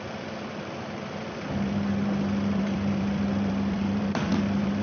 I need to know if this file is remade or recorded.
remade